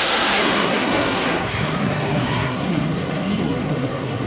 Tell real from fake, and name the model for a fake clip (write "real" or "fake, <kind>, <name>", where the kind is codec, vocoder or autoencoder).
fake, codec, SNAC